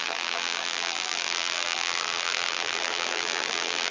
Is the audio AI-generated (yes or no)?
yes